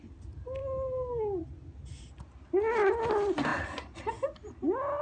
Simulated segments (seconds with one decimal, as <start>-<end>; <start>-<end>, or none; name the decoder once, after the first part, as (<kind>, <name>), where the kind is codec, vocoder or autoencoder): none